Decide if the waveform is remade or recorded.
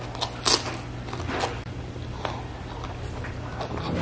recorded